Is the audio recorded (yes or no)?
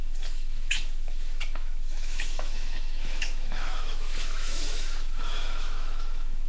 no